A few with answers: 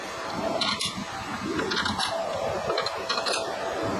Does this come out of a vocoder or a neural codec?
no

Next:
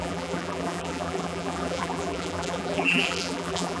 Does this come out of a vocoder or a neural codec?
yes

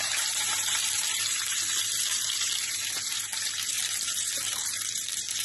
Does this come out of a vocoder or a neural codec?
yes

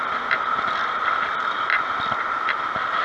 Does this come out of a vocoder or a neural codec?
yes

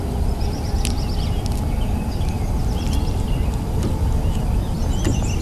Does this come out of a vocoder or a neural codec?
no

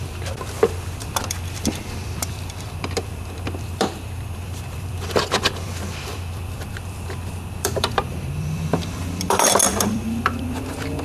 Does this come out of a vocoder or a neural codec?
yes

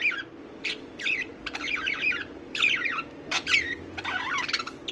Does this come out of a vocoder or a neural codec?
yes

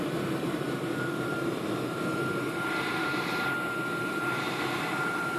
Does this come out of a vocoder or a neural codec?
yes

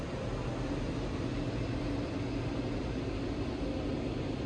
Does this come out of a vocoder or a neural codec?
no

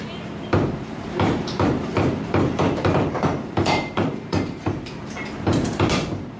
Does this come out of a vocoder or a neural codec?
yes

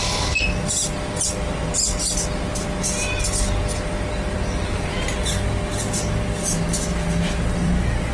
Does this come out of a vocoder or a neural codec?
yes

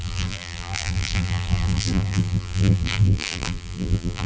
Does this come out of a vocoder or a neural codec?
yes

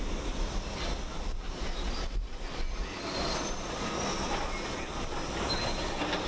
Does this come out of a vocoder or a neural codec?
no